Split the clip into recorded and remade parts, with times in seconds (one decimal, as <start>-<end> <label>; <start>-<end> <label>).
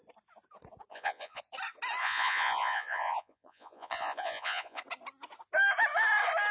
0.0-0.9 recorded; 0.9-1.4 remade; 1.4-2.0 recorded; 2.0-4.8 remade; 4.8-6.5 recorded